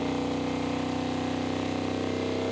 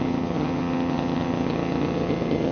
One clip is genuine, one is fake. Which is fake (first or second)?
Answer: second